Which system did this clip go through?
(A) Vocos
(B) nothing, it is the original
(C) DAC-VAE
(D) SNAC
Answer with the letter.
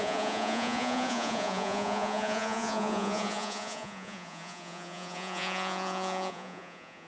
A